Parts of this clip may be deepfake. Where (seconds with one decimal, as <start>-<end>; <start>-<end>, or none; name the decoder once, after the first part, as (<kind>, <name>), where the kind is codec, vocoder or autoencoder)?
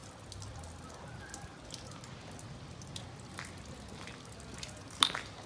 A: none